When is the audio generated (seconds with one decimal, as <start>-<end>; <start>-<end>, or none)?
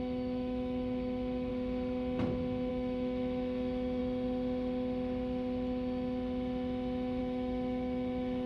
0.0-1.5; 2.7-4.0; 7.2-8.5